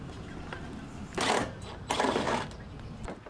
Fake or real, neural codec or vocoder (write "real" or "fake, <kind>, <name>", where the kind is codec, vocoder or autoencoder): real